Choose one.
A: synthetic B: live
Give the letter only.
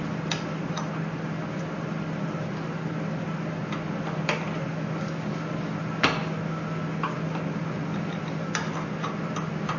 B